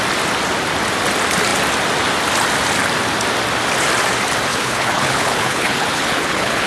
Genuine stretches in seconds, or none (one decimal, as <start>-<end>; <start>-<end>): 0.0-4.5